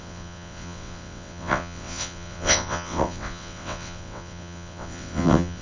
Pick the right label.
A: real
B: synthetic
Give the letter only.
B